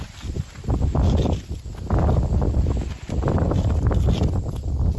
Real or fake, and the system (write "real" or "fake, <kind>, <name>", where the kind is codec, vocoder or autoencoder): real